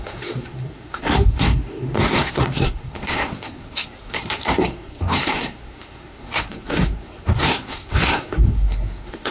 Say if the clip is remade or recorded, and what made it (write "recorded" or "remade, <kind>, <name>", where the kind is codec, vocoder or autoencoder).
remade, codec, SNAC